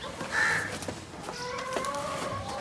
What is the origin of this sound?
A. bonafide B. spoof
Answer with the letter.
A